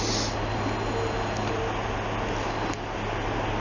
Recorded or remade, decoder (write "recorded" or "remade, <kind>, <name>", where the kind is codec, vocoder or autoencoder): recorded